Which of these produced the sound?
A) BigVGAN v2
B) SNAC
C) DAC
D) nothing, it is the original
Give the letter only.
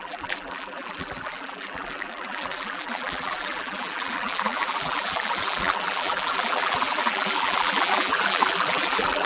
A